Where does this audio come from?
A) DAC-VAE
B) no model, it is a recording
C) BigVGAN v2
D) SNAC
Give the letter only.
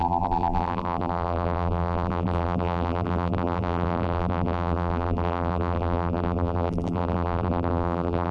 C